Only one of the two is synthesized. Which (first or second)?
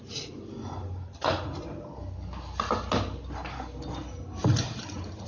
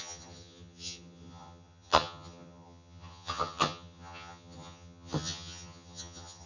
second